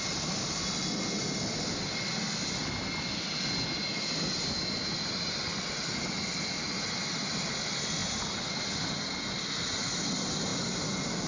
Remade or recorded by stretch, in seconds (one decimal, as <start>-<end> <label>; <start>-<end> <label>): 0.0-11.3 recorded